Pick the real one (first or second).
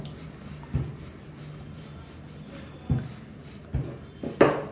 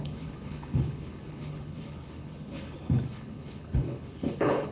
first